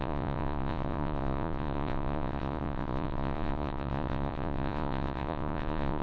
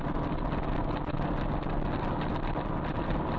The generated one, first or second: first